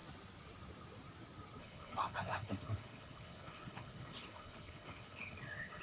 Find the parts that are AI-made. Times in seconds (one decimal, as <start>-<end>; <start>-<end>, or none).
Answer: 1.6-5.8